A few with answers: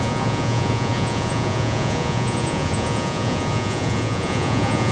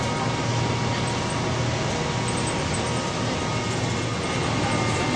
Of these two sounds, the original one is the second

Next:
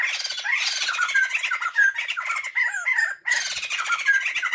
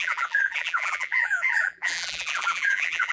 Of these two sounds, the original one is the first